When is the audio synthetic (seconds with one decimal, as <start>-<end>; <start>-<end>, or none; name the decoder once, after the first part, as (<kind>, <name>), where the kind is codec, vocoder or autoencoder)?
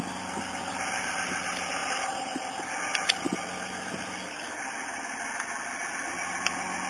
none